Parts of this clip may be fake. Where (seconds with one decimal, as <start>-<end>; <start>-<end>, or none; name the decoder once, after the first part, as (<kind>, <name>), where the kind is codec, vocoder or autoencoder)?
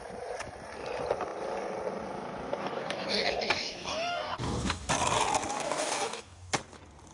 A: 2.6-4.9 (codec, DAC); 5.5-6.5